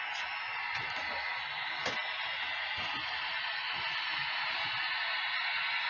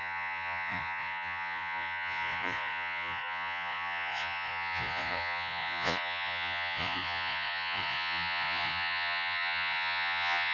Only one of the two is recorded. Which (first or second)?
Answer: first